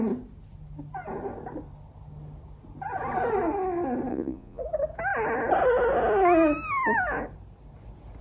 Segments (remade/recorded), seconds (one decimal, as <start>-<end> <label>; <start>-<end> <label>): 0.0-4.1 recorded; 4.1-4.6 remade; 4.6-8.2 recorded

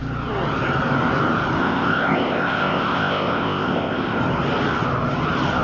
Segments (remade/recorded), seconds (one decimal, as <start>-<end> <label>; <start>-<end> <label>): 0.0-1.6 recorded; 1.6-4.2 remade; 4.2-5.6 recorded

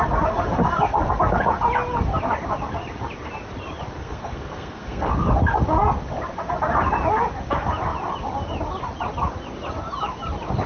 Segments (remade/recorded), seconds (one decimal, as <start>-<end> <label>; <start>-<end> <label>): 0.0-4.0 recorded; 4.0-5.1 remade; 5.1-10.7 recorded

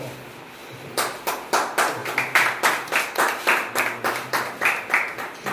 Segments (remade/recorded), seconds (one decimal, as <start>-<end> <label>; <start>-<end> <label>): 0.0-0.6 recorded; 0.6-1.3 remade; 1.3-5.5 recorded

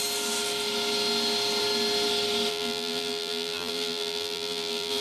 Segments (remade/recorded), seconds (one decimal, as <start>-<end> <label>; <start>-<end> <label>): 0.0-2.5 recorded; 2.5-5.0 remade

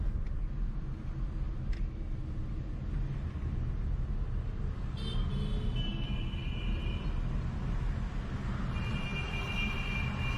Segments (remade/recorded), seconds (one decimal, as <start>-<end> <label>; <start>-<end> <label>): 0.0-10.4 recorded

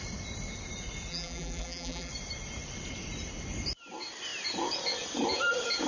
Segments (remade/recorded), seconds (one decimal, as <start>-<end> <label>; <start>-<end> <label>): 0.0-1.1 recorded; 1.1-2.1 remade; 2.1-5.9 recorded

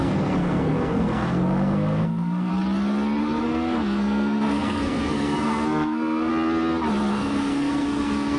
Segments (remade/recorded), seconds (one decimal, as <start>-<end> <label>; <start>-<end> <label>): 0.0-2.5 remade; 2.5-3.2 recorded; 3.2-6.3 remade; 6.3-7.1 recorded; 7.1-8.4 remade